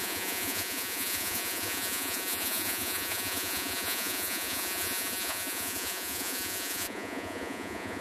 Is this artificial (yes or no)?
yes